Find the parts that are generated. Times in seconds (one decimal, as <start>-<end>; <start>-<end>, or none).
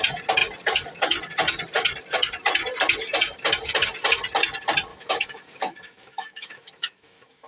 4.9-7.5